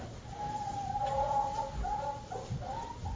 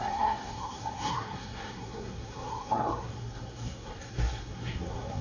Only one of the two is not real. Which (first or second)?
second